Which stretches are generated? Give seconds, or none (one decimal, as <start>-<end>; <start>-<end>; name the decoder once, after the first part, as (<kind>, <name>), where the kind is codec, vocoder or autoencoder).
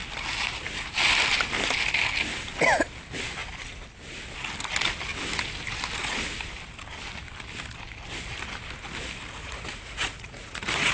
9.4-10.9 (vocoder, Vocos)